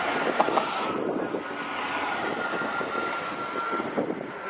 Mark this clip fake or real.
real